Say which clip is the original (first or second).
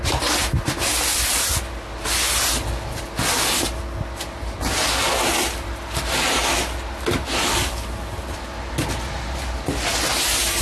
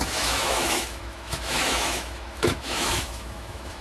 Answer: first